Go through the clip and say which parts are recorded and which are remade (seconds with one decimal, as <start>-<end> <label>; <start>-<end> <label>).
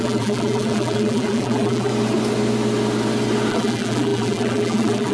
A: 0.0-1.9 remade; 1.9-3.5 recorded; 3.5-5.1 remade